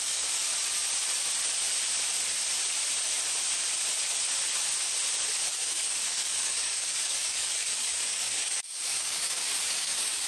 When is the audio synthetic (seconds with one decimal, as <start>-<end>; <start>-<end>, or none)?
0.0-0.4; 5.5-10.3